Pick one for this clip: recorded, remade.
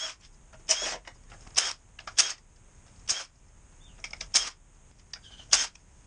recorded